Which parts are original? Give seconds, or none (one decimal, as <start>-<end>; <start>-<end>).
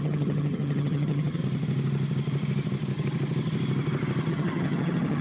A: 1.4-4.3